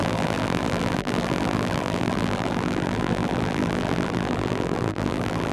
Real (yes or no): no